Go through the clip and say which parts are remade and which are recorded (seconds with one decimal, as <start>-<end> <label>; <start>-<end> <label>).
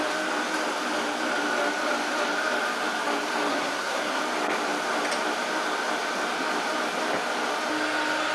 0.0-3.5 recorded; 3.5-4.2 remade; 4.2-8.3 recorded